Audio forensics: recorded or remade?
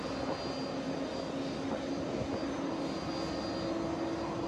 recorded